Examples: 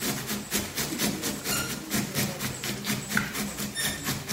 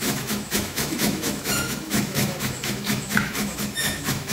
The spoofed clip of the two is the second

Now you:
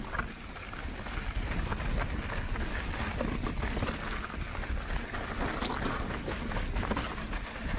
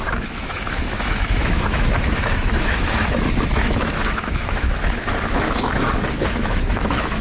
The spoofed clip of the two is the second